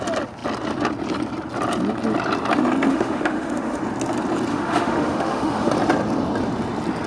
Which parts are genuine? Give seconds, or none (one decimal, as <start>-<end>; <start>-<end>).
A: 0.0-2.9; 3.8-4.5; 5.7-7.1